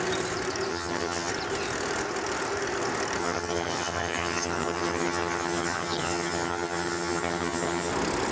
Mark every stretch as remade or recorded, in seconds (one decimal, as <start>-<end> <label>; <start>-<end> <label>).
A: 0.0-0.7 recorded; 0.7-1.3 remade; 1.3-3.2 recorded; 3.2-7.9 remade; 7.9-8.3 recorded